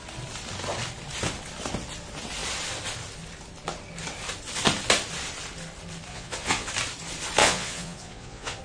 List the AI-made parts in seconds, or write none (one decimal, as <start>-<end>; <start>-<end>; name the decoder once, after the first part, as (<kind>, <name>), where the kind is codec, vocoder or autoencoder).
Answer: 6.1-6.7 (vocoder, Vocos); 7.4-8.6

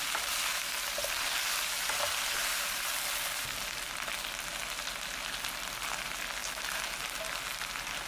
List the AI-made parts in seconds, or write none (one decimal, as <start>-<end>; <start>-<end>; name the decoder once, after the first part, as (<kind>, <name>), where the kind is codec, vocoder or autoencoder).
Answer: none

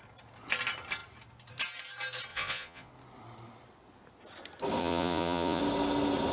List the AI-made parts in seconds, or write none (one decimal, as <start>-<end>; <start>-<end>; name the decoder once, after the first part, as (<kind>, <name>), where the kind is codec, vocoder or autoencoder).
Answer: 2.3-2.9 (vocoder, Vocos); 4.8-5.6

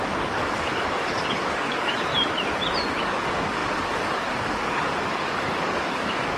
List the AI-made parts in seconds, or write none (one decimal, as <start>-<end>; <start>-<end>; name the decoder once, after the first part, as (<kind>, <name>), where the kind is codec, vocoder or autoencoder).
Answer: 0.0-2.1 (codec, DAC); 3.0-6.4

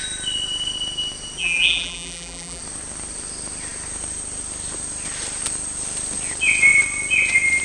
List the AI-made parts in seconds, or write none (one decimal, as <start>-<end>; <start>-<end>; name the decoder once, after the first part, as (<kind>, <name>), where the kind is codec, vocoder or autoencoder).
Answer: 1.4-2.6 (vocoder, BigVGAN v2)